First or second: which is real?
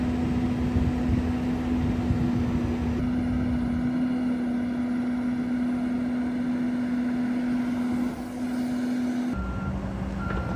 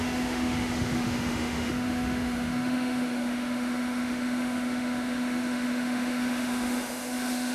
first